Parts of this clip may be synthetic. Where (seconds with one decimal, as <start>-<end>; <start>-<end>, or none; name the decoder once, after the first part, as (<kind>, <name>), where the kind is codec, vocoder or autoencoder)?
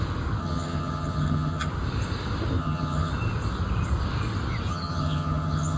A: 0.4-1.7 (vocoder, HiFi-GAN); 2.6-3.1; 4.7-5.8